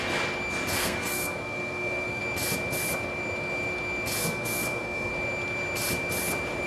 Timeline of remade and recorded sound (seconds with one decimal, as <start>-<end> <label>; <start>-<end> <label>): 0.0-0.8 recorded; 0.8-2.2 remade; 2.2-4.2 recorded; 4.2-5.1 remade; 5.1-6.7 recorded